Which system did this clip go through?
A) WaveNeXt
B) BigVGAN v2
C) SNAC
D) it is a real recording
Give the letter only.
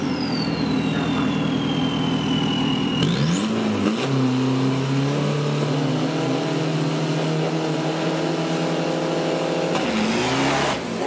D